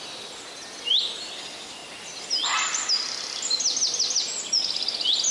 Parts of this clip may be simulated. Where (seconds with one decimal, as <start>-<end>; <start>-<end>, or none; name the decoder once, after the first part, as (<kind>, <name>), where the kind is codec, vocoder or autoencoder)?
none